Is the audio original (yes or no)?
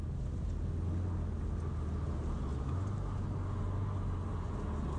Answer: yes